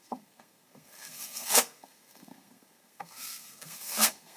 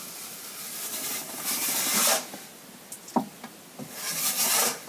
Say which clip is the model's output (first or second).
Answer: first